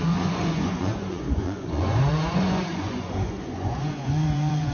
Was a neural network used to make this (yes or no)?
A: yes